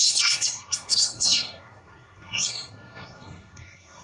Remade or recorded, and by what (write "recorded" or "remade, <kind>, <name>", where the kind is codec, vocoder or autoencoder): remade, codec, SNAC